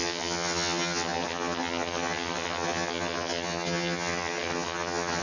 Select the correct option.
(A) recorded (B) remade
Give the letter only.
B